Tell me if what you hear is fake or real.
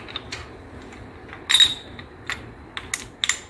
real